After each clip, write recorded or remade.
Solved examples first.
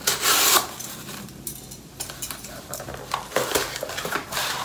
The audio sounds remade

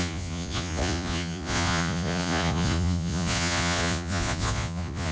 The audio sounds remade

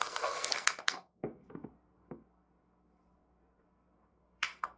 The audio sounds remade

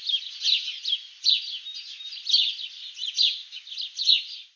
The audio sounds recorded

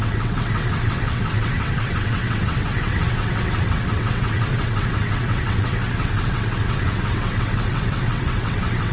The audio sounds remade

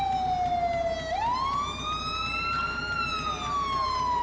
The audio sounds recorded